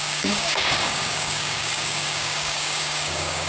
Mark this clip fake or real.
fake